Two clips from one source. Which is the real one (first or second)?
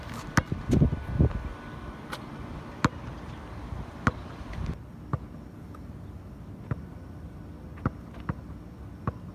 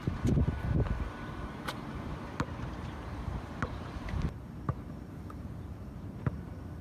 first